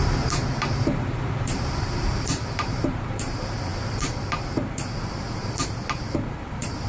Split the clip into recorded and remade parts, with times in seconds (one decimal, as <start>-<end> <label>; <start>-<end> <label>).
0.0-6.9 remade